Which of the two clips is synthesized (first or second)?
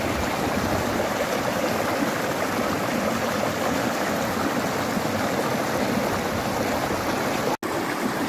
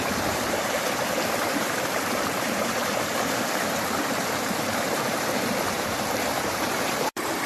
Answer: second